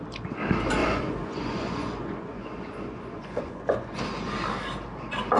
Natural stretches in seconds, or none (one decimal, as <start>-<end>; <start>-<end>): 0.0-0.8; 4.0-5.4